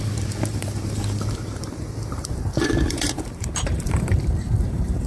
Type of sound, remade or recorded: remade